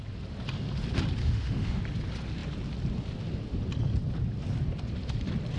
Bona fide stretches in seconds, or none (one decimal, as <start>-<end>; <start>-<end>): 0.0-1.2; 1.8-5.6